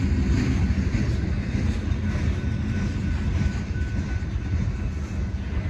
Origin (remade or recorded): recorded